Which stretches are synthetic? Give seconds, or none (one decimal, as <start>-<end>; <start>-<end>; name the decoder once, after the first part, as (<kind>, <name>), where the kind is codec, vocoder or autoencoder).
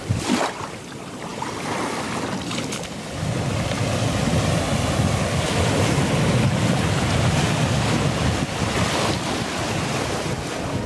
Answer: 1.3-1.8 (vocoder, BigVGAN v2)